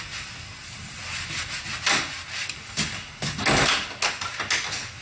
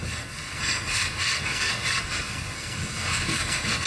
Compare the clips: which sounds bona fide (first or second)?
first